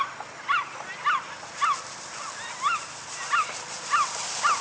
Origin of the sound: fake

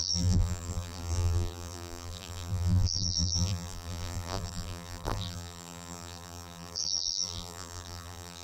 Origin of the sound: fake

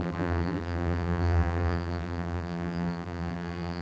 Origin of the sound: fake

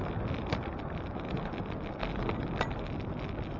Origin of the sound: real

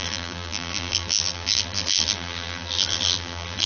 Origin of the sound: fake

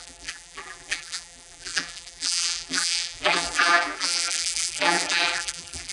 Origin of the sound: fake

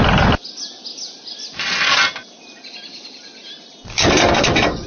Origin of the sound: real